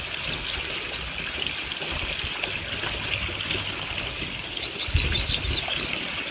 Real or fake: real